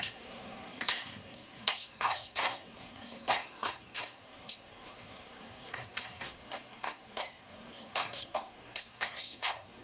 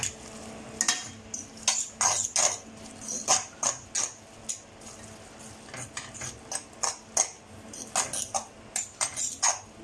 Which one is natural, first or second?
second